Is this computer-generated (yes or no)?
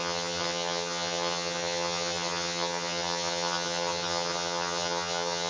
yes